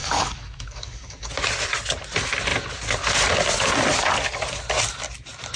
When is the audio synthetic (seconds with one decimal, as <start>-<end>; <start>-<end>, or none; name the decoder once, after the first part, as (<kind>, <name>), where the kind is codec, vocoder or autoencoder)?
0.0-1.3 (codec, DAC)